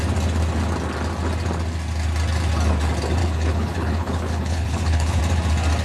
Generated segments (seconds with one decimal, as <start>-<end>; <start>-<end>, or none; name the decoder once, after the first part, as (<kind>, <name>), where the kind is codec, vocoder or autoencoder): 3.2-5.2 (codec, HILCodec)